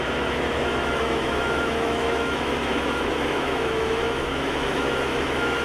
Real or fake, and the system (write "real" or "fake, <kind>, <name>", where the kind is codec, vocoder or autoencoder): fake, autoencoder, DAC-VAE